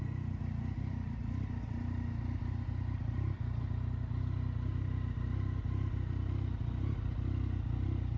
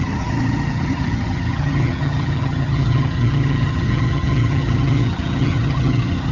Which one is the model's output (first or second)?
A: second